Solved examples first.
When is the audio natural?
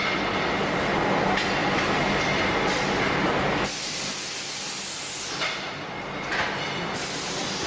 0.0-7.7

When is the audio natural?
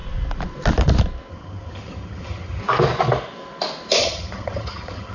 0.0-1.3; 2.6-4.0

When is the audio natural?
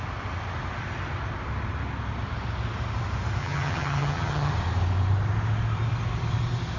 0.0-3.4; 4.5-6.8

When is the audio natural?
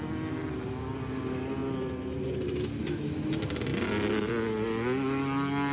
0.0-5.7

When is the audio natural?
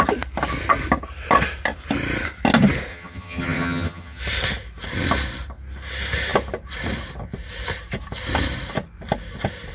0.0-2.9; 4.2-9.7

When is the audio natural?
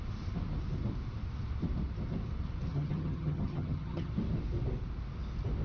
0.0-2.7; 4.1-5.6